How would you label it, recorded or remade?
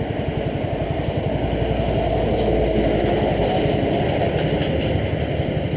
recorded